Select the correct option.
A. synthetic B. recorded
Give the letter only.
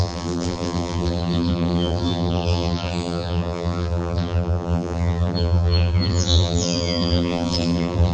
A